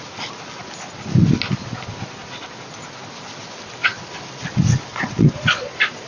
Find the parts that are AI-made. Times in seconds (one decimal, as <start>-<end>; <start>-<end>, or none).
4.9-6.1